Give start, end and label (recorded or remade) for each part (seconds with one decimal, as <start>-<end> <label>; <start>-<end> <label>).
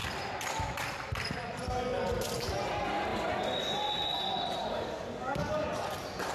0.0-4.6 recorded; 4.6-5.7 remade; 5.7-6.3 recorded